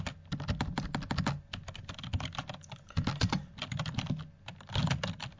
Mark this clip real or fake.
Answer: real